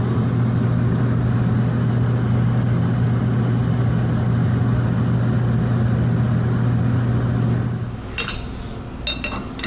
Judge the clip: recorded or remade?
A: recorded